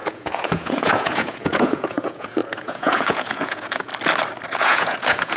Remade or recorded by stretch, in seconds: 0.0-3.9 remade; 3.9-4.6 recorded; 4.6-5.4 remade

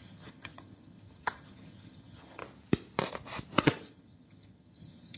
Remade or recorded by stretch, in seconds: 0.0-2.4 remade; 2.4-3.6 recorded; 3.6-5.2 remade